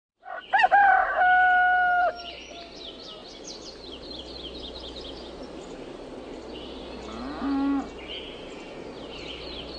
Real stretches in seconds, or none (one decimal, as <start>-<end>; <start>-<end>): 0.0-9.8